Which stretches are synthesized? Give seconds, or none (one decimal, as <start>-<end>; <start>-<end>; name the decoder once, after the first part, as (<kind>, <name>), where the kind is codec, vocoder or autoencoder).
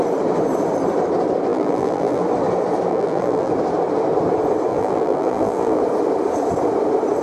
1.5-2.2 (vocoder, BigVGAN v2); 2.9-3.5; 4.7-5.8